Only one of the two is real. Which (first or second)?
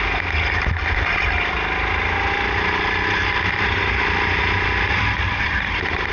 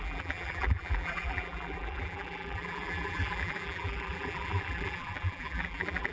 first